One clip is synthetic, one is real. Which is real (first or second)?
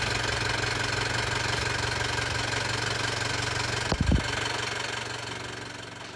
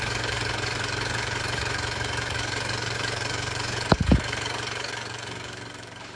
first